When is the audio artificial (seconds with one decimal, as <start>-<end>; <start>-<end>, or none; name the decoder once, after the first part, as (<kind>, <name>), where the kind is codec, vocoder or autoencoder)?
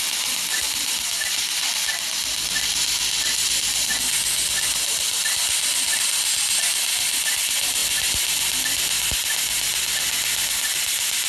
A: none